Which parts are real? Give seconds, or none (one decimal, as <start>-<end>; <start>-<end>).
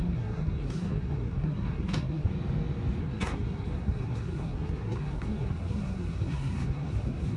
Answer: 2.3-3.0